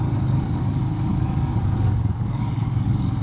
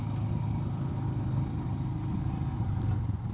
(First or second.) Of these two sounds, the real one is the second